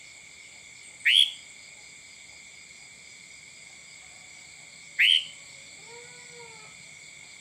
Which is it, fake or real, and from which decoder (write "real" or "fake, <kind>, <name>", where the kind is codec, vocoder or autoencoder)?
real